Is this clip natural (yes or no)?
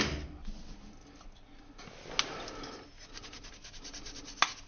yes